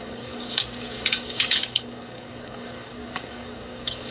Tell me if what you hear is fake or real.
fake